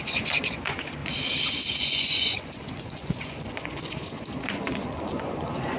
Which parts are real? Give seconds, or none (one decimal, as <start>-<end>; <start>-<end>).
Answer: 1.0-1.8